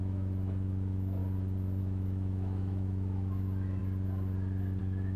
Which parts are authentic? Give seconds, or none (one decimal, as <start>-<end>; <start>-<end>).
1.2-1.8; 3.8-4.8